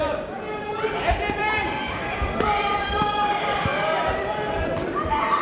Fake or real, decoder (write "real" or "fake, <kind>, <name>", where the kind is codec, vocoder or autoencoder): fake, vocoder, BigVGAN v2